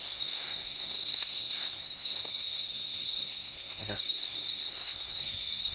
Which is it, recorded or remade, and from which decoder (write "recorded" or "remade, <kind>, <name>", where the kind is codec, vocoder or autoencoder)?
remade, codec, SNAC